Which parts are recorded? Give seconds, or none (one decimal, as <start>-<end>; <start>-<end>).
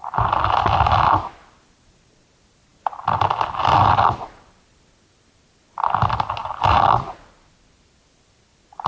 0.0-8.9